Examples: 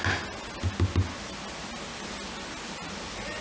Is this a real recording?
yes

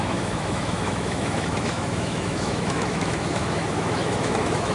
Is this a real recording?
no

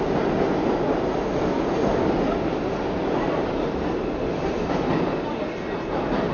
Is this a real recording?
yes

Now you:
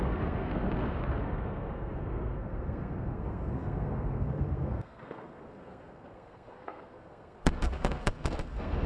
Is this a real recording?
no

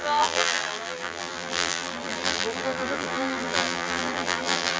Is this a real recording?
no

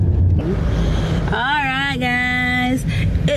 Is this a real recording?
yes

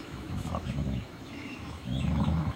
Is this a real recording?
no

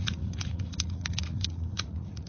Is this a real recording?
no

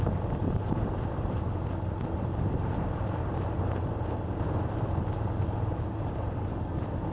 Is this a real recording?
yes